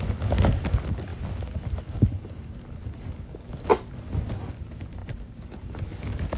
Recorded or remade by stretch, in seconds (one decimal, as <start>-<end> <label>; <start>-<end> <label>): 0.0-3.7 remade; 3.7-4.5 recorded; 4.5-6.4 remade